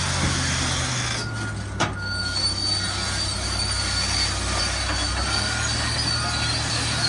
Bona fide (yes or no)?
yes